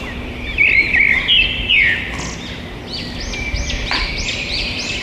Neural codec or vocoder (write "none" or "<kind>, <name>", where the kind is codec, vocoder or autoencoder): none